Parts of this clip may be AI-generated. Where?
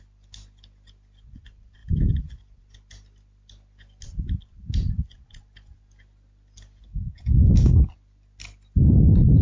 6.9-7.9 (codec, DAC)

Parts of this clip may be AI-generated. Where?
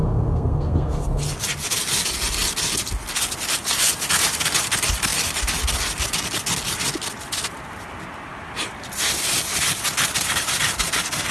0.0-1.2 (codec, SNAC)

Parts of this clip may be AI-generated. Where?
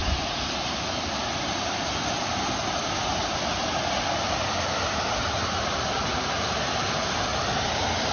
none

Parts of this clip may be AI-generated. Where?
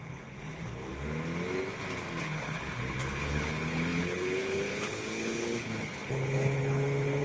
0.0-0.9 (codec, HILCodec); 2.2-7.2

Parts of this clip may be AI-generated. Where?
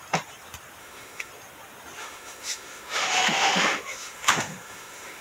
0.8-1.3 (autoencoder, DAC-VAE); 2.0-5.2